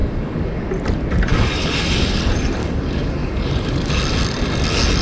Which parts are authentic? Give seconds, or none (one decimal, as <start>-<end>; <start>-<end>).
0.7-1.3; 2.2-2.6; 3.9-5.0